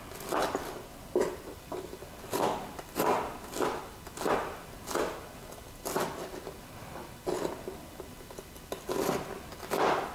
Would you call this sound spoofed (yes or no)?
no